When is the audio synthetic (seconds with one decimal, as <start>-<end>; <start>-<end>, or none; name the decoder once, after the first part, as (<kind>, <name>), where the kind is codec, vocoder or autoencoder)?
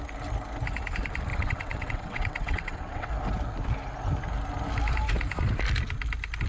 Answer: 1.3-3.1 (vocoder, WaveNeXt)